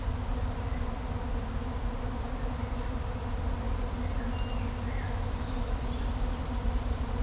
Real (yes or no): yes